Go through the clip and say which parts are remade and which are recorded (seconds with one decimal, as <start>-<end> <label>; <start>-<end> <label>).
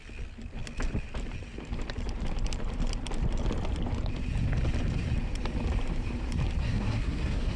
0.0-6.6 recorded; 6.6-7.6 remade